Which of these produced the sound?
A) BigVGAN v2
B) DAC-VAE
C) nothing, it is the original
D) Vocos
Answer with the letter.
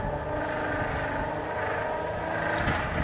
C